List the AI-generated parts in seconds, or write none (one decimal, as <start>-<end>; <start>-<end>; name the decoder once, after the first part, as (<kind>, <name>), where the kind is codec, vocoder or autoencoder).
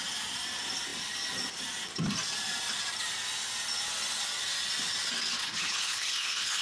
5.4-6.6 (codec, HILCodec)